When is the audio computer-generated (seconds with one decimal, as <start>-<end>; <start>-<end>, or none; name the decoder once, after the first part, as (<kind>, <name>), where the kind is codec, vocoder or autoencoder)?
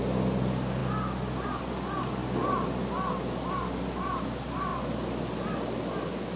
4.7-5.8 (vocoder, BigVGAN v2)